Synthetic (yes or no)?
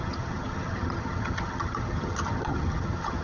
yes